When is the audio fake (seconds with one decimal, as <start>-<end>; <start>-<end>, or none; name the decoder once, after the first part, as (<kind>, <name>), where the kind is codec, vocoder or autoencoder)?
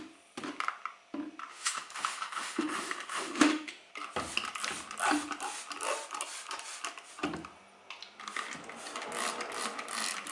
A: 1.5-3.9 (autoencoder, DAC-VAE)